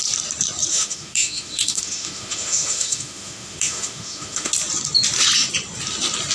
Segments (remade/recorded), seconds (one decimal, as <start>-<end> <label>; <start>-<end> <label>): 0.0-0.7 recorded; 0.7-4.5 remade; 4.5-6.3 recorded